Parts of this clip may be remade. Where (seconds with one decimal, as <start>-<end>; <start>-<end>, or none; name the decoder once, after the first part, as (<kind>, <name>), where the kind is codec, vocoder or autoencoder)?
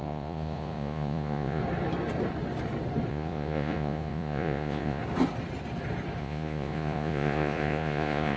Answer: 0.0-1.6 (vocoder, Vocos); 3.1-5.0; 6.2-8.4